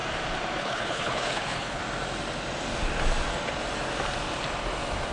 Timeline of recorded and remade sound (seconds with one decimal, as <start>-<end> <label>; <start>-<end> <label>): 0.0-0.6 recorded; 0.6-1.8 remade; 1.8-5.1 recorded